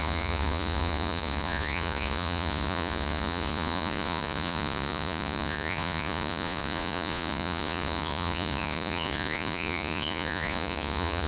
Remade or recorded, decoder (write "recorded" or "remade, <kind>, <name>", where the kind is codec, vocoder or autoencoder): remade, vocoder, Vocos